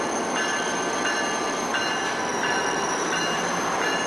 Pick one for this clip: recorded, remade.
recorded